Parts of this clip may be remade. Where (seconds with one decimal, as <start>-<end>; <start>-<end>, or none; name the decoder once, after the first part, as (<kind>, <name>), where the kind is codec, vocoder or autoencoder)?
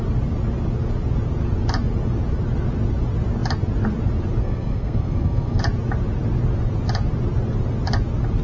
4.4-5.6 (codec, SNAC)